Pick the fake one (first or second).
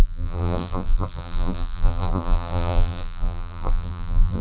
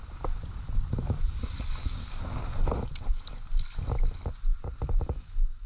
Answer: first